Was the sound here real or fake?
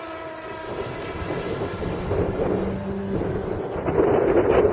real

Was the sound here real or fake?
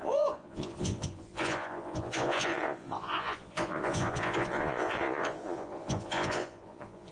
fake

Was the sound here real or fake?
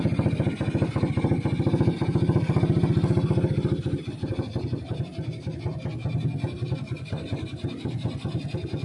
real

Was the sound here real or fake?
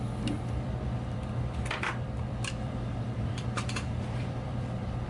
fake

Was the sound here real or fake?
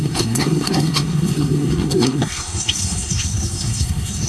fake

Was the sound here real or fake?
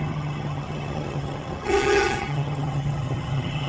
fake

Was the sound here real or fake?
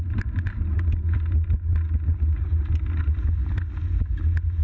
real